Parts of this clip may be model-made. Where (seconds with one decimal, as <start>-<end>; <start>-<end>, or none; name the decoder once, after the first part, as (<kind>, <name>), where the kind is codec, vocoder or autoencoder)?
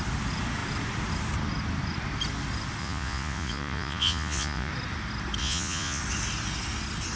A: 2.8-4.7 (vocoder, Vocos); 5.4-6.0